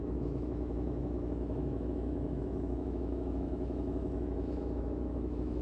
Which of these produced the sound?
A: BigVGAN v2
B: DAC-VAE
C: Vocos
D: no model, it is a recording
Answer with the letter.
B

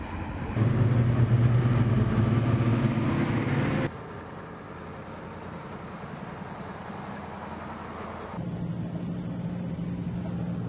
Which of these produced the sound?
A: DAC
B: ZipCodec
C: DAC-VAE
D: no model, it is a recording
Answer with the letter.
D